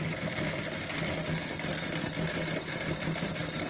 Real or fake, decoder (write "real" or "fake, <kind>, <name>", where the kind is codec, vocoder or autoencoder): real